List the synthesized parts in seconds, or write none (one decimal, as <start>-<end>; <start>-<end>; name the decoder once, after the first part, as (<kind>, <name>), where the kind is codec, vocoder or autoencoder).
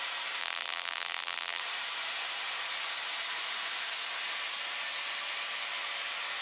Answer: 0.4-1.6 (vocoder, BigVGAN v2)